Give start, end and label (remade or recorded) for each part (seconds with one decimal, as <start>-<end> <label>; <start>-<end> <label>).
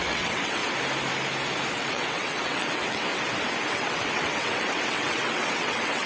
0.0-0.6 remade; 0.6-1.7 recorded; 1.7-3.1 remade; 3.1-3.7 recorded; 3.7-6.1 remade